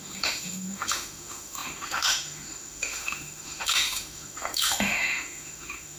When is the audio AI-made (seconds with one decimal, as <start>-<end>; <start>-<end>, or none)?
0.0-6.0